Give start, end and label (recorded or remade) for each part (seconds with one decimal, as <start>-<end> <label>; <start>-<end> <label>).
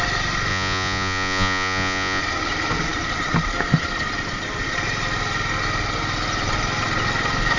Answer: 0.0-0.5 recorded; 0.5-2.2 remade; 2.2-7.6 recorded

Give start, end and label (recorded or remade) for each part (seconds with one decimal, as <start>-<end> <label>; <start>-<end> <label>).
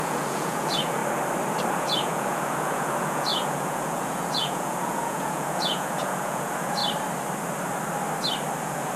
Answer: 0.0-1.0 remade; 1.0-1.7 recorded; 1.7-6.8 remade; 6.8-8.6 recorded; 8.6-9.0 remade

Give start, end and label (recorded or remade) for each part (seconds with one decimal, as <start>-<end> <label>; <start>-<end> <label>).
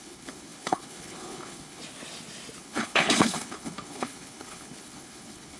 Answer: 0.0-1.8 remade; 1.8-2.6 recorded; 2.6-5.6 remade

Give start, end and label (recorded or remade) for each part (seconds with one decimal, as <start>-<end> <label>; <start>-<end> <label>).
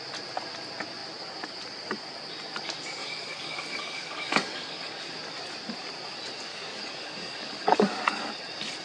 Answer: 0.0-3.0 recorded; 3.0-5.1 remade; 5.1-6.5 recorded; 6.5-8.3 remade; 8.3-8.8 recorded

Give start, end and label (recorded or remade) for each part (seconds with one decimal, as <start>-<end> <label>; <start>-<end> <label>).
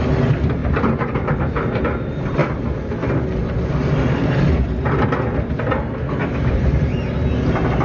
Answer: 0.0-0.6 recorded; 0.6-1.8 remade; 1.8-6.2 recorded; 6.2-6.9 remade; 6.9-7.8 recorded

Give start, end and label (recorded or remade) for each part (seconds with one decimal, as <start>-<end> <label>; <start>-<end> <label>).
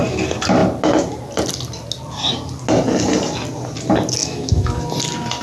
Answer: 0.0-4.2 recorded; 4.2-4.8 remade; 4.8-5.4 recorded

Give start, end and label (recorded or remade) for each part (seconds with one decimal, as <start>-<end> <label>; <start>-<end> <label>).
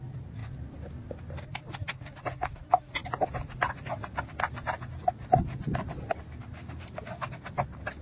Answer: 0.0-8.0 recorded